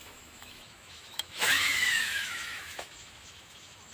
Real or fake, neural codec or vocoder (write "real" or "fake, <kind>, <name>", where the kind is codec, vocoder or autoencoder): fake, autoencoder, DAC-VAE